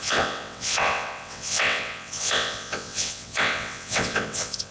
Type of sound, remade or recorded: remade